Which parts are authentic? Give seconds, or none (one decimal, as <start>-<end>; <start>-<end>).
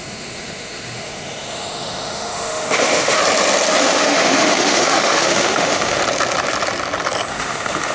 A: 3.2-3.8; 6.0-7.3